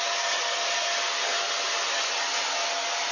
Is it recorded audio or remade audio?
recorded